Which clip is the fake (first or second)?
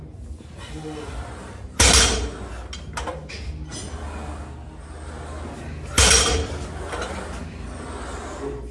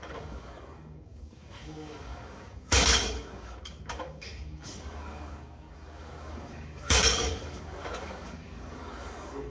second